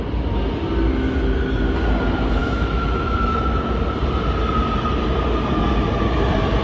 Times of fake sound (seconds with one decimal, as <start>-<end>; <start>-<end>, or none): 2.4-3.8

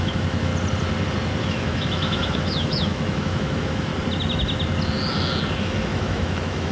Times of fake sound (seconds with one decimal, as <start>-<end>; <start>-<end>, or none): 0.0-0.5; 1.4-3.9; 5.6-6.7

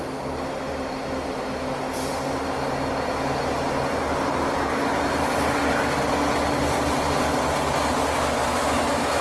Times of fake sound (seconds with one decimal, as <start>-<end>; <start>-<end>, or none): 8.4-9.2